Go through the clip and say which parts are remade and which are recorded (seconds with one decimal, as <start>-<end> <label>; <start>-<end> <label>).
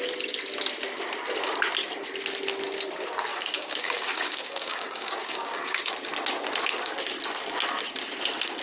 0.0-3.3 recorded; 3.3-5.9 remade; 5.9-8.6 recorded